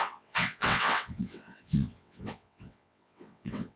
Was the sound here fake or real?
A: fake